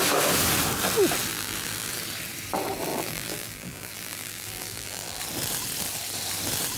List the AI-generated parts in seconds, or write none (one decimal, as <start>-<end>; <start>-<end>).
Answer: 1.3-1.9; 2.9-5.2